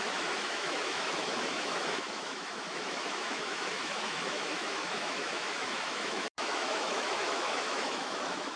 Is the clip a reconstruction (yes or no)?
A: yes